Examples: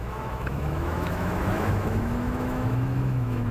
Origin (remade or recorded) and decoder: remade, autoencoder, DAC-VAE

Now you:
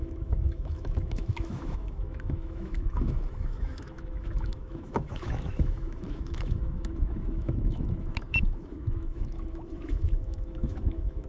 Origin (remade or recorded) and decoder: remade, autoencoder, DAC-VAE